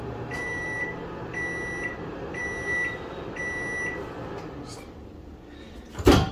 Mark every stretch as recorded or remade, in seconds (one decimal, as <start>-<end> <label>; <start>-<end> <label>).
0.0-1.0 remade; 1.0-1.9 recorded; 1.9-2.4 remade; 2.4-6.3 recorded